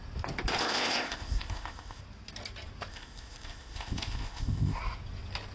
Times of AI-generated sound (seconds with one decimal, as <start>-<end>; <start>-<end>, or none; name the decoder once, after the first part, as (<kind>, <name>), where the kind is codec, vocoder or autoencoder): 0.6-2.0 (codec, ZipCodec); 2.9-4.8